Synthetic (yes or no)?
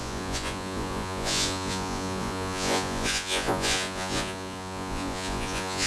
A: yes